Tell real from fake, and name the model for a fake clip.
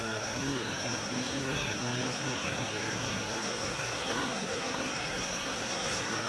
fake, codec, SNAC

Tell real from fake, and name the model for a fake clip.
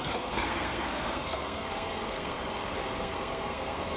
fake, codec, SNAC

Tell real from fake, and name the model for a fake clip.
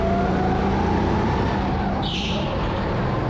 real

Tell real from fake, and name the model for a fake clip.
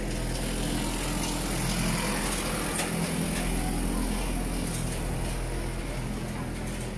real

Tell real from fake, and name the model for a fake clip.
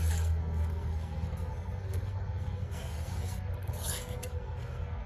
fake, codec, SNAC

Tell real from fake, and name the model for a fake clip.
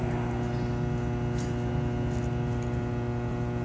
real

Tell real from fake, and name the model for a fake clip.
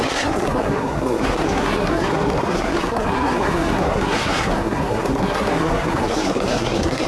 fake, codec, SNAC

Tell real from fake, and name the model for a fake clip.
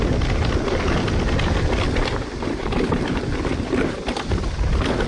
real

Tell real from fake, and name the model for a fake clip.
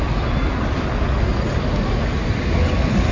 real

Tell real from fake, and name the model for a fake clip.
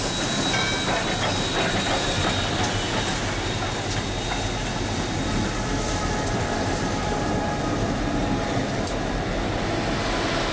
real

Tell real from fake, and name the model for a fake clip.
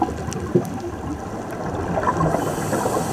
real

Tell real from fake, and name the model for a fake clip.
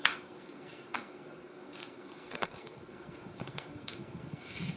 fake, codec, SNAC